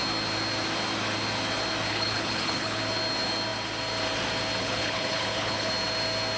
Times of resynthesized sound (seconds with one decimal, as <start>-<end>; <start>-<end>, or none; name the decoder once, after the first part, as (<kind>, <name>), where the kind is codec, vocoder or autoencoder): 1.9-2.8 (codec, HILCodec); 4.6-5.7